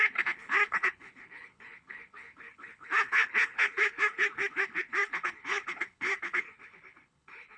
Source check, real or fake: fake